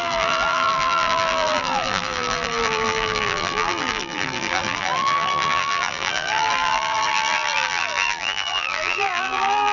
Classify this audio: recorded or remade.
remade